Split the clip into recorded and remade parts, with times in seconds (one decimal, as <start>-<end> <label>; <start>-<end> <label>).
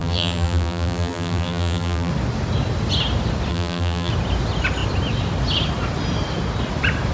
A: 0.0-2.1 remade; 2.1-3.5 recorded; 3.5-4.1 remade; 4.1-7.1 recorded